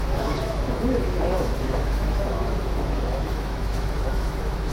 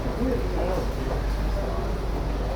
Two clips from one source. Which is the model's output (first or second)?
first